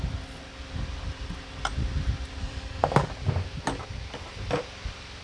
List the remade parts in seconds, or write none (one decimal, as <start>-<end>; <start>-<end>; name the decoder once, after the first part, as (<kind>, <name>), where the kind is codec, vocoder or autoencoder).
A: 2.4-3.1 (codec, DAC)